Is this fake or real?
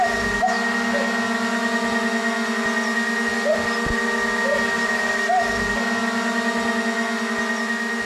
real